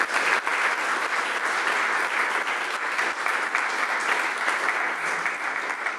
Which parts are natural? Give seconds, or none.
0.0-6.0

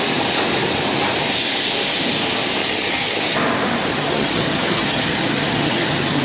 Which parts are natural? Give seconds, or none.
0.0-2.6; 3.2-3.9

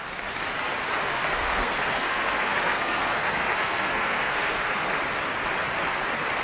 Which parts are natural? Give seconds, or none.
0.0-1.1; 4.9-6.4

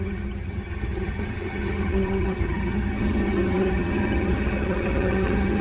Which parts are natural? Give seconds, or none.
none